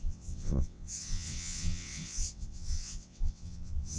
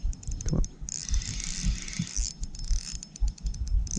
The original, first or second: second